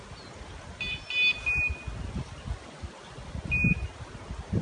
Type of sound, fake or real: real